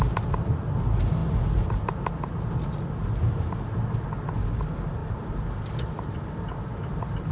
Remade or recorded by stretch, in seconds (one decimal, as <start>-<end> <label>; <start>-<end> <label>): 0.0-5.0 recorded; 5.0-7.3 remade